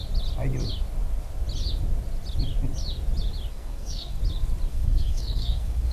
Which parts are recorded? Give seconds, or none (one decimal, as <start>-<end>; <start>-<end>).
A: 0.0-3.5; 4.2-4.7